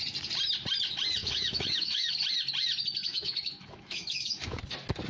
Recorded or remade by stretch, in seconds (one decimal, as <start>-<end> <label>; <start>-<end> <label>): 0.0-1.2 recorded; 1.2-2.1 remade; 2.1-3.1 recorded; 3.1-4.6 remade; 4.6-5.1 recorded